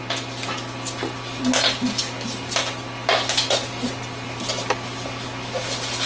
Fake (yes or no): no